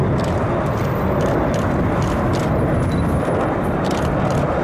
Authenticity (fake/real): real